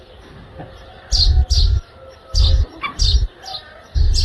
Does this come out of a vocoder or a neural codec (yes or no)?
no